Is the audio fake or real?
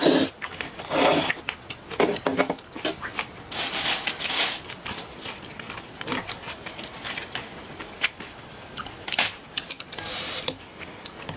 real